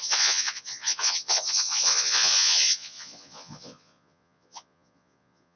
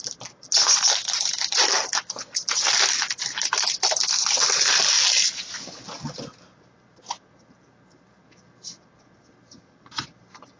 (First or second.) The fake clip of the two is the first